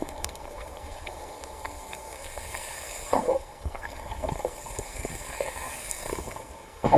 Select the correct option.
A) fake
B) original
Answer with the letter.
A